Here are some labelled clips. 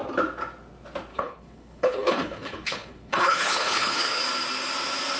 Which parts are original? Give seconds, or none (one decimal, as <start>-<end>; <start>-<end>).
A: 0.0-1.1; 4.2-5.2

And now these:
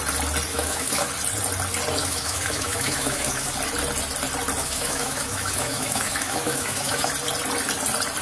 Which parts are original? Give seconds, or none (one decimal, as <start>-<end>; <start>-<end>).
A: 0.0-0.5; 1.1-2.0; 3.5-4.6; 7.1-8.2

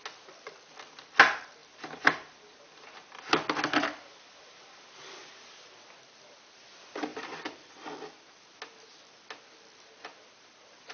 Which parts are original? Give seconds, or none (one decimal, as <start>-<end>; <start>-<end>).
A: 0.0-1.6; 4.9-7.1; 8.4-10.9

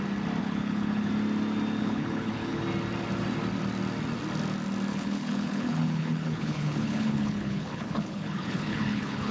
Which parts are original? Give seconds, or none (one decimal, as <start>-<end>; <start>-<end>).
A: 0.0-0.4; 1.1-1.8; 2.6-4.9

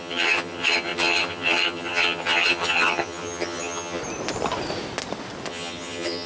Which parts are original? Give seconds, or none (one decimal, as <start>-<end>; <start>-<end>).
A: 4.0-5.5

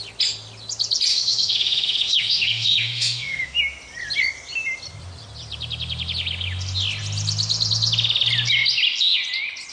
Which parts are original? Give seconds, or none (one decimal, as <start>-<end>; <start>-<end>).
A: 0.0-1.1; 3.6-9.7

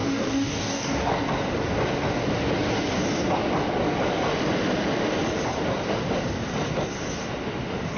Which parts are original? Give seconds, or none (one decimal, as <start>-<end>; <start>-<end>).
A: 1.2-8.0